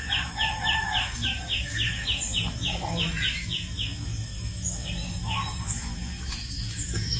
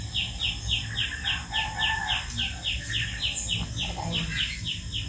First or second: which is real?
second